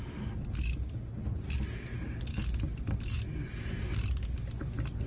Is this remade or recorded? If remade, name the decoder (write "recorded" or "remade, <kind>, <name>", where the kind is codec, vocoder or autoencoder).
recorded